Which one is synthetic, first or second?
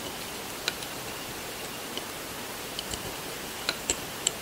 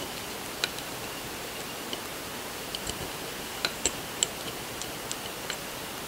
first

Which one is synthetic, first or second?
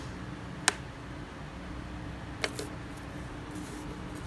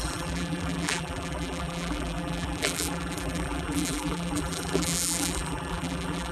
second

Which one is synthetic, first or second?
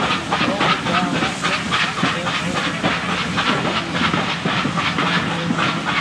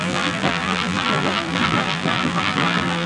second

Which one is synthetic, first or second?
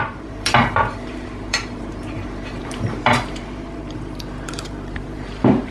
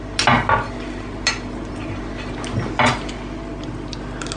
first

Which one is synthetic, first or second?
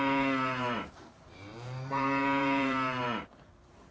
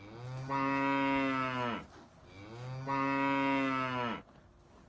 first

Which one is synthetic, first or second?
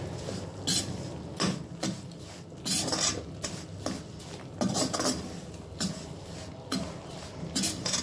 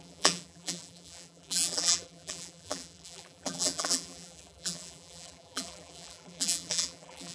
second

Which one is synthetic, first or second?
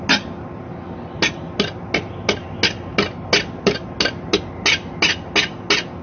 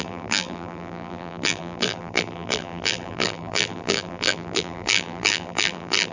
second